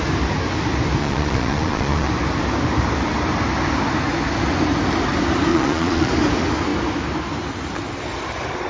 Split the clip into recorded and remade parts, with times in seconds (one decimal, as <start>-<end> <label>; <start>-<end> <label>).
0.0-1.0 recorded; 1.0-2.1 remade; 2.1-5.5 recorded; 5.5-6.1 remade; 6.1-8.7 recorded